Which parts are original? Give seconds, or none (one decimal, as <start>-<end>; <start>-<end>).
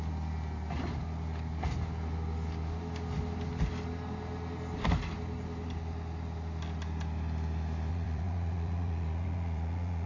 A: 0.0-7.9